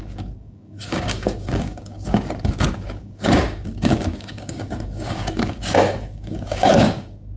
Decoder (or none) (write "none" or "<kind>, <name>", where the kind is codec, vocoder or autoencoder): codec, DAC